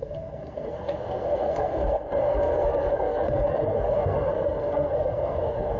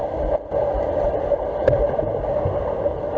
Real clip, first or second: second